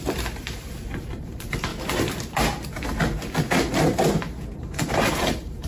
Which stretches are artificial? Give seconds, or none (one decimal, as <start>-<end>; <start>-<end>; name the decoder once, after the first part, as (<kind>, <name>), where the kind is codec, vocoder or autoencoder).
0.0-1.7 (vocoder, BigVGAN v2); 4.5-5.7